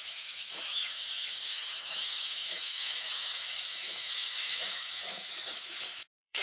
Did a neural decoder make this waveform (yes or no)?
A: yes